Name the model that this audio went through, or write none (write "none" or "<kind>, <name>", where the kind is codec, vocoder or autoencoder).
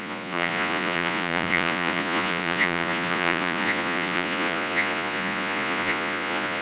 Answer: vocoder, Vocos